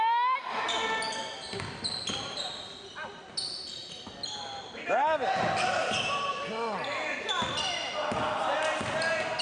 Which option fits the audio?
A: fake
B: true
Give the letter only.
B